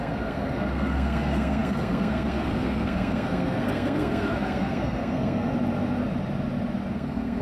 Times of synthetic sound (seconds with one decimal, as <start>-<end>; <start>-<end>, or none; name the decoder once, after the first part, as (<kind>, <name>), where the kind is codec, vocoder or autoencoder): 0.0-5.5 (codec, SNAC); 6.9-7.4